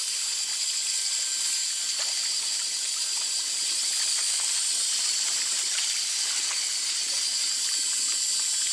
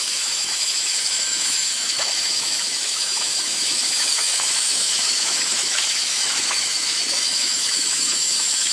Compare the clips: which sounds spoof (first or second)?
second